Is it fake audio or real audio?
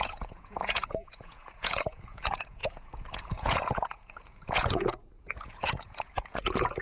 fake